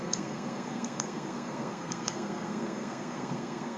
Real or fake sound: fake